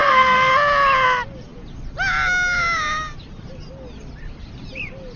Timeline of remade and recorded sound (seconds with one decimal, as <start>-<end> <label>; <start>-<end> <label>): 0.0-0.5 remade; 0.5-5.2 recorded